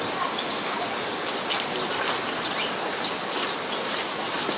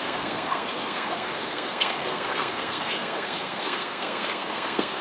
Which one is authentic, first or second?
first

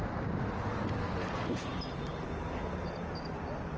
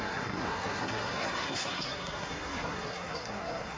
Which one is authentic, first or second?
first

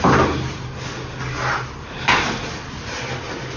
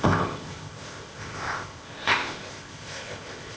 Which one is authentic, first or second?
first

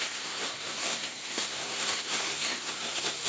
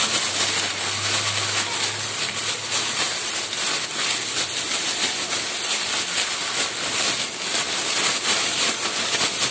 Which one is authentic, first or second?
second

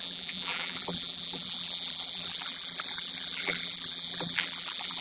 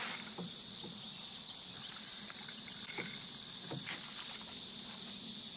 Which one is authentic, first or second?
second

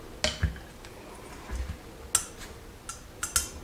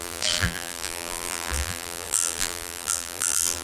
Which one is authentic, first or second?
first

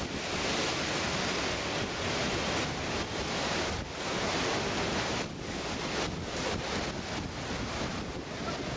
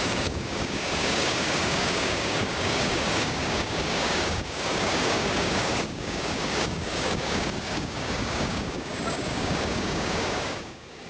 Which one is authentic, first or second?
first